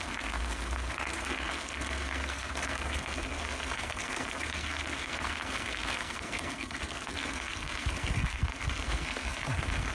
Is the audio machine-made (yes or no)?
yes